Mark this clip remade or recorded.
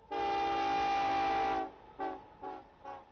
recorded